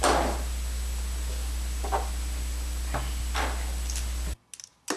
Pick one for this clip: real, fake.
real